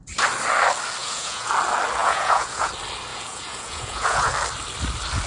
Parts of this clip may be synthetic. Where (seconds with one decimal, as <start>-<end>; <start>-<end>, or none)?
1.0-1.5; 2.0-2.7; 3.1-4.3